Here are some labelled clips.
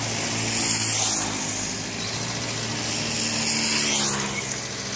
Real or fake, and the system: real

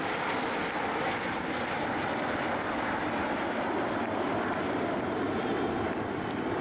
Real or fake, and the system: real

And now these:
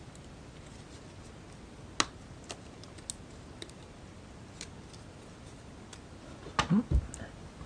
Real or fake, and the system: real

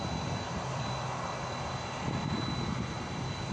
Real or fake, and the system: real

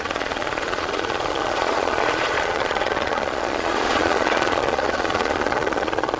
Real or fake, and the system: fake, vocoder, Vocos